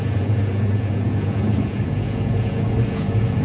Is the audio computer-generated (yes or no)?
yes